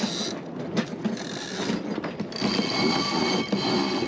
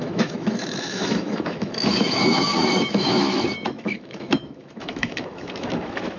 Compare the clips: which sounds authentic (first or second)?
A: first